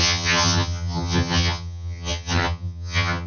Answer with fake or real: fake